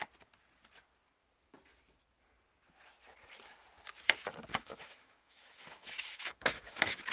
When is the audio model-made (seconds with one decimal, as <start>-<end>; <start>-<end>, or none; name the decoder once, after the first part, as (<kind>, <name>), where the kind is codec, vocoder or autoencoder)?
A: 4.5-7.1 (autoencoder, DAC-VAE)